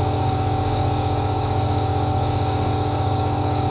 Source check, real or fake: fake